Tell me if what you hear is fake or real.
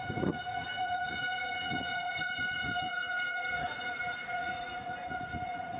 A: fake